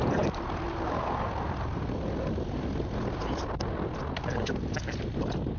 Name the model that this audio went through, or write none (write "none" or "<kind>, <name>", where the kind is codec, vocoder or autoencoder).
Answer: none